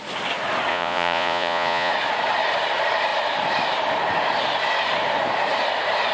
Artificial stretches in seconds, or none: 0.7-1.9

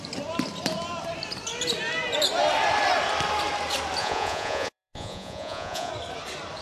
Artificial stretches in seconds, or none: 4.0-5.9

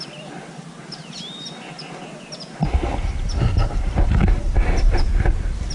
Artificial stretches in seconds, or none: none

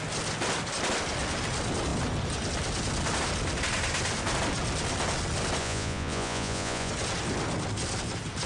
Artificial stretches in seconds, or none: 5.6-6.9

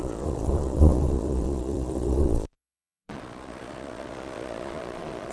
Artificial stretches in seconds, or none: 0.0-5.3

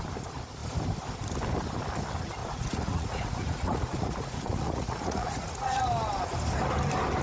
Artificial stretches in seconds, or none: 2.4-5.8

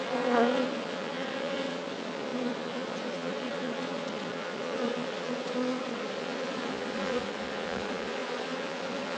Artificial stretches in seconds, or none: 0.0-9.2

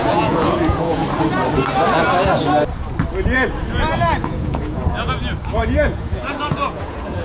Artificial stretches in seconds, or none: 0.0-1.0; 4.2-4.8; 5.5-7.2